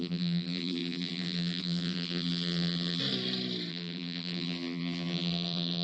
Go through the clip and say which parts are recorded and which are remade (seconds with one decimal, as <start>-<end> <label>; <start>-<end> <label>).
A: 0.0-3.0 remade; 3.0-3.7 recorded; 3.7-5.8 remade